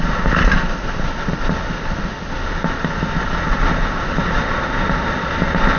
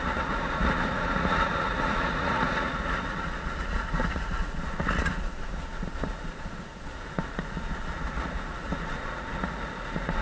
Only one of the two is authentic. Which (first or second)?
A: first